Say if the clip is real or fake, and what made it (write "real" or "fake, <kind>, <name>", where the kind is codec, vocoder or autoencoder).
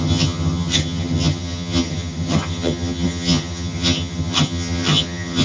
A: fake, vocoder, HiFi-GAN